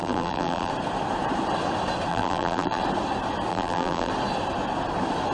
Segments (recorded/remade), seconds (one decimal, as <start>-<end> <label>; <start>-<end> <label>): 0.0-0.7 remade; 0.7-2.1 recorded; 2.1-2.8 remade; 2.8-3.5 recorded; 3.5-4.1 remade; 4.1-5.3 recorded